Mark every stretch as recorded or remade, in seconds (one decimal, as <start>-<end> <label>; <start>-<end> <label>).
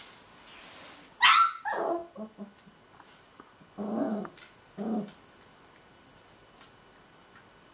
0.0-7.7 recorded